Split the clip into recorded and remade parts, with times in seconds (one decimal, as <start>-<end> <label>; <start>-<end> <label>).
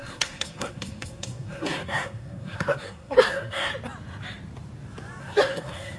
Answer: 0.0-3.7 remade; 3.7-5.2 recorded; 5.2-6.0 remade